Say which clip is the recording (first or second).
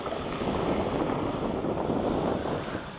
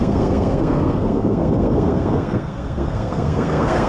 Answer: first